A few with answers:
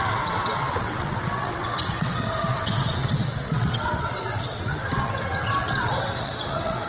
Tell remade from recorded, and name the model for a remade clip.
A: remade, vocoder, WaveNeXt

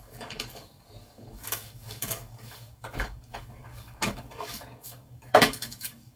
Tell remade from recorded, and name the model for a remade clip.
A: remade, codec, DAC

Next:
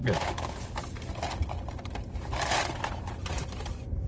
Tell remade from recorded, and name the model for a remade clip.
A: recorded